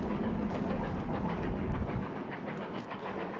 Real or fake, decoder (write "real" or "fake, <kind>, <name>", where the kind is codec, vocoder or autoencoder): fake, codec, DAC